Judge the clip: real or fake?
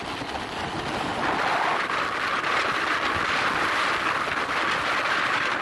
real